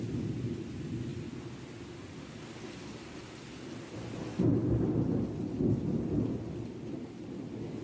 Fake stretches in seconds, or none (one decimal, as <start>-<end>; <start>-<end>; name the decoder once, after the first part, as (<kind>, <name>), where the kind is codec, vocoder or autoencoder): 0.0-1.1 (vocoder, BigVGAN v2); 2.4-4.5; 5.7-7.8